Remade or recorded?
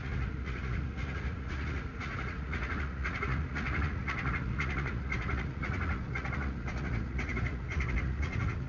remade